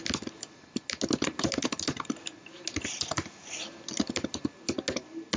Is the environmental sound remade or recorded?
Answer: recorded